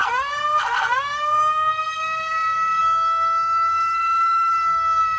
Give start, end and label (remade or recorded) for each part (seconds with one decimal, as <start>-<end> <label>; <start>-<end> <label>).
0.0-5.2 remade